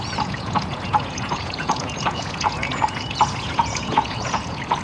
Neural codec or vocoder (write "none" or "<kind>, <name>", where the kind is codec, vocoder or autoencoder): vocoder, Vocos